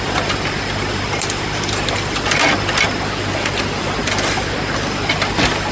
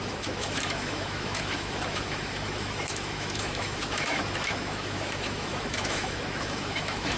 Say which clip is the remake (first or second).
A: second